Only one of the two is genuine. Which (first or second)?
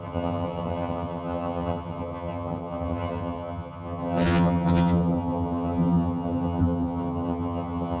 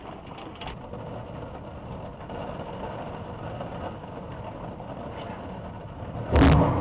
second